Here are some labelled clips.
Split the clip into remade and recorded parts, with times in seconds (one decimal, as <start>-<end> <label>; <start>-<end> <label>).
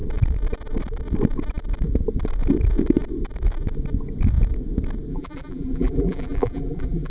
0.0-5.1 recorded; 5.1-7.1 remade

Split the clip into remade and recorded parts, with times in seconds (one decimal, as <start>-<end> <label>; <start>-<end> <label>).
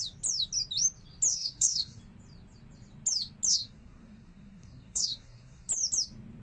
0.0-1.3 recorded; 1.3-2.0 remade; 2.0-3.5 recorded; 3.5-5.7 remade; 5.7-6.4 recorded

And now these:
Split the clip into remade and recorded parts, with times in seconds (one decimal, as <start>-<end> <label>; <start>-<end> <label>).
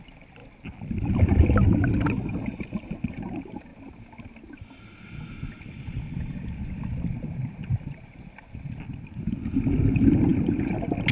0.0-11.1 recorded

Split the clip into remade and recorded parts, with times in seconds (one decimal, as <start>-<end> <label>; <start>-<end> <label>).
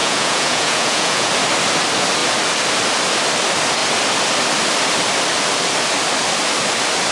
0.0-1.3 remade; 1.3-7.1 recorded